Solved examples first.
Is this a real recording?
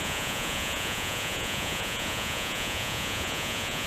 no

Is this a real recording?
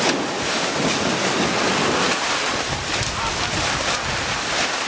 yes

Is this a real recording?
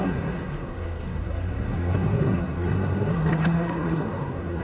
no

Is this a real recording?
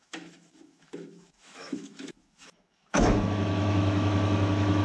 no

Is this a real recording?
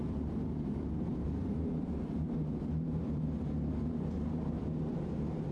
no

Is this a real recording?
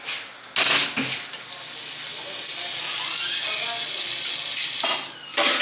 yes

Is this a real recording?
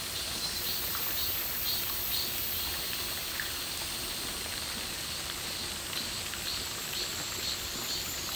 yes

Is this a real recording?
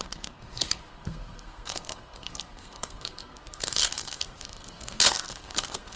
no